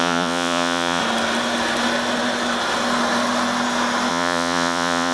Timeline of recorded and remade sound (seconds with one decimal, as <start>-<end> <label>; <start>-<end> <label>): 0.0-1.0 remade; 1.0-4.1 recorded; 4.1-5.1 remade